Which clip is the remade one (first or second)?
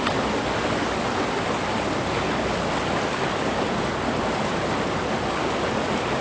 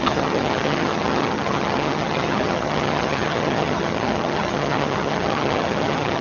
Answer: second